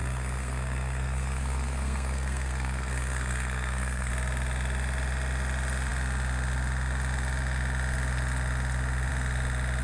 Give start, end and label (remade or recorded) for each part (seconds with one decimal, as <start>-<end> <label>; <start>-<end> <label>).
0.0-4.1 remade; 4.1-9.8 recorded